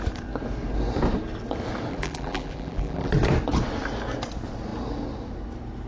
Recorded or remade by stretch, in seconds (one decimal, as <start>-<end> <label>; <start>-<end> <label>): 0.0-1.9 recorded; 1.9-3.1 remade; 3.1-5.9 recorded